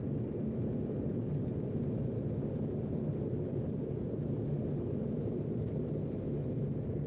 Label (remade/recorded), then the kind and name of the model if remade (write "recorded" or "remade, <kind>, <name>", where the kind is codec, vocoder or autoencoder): recorded